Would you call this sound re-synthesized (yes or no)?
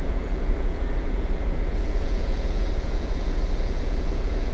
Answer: yes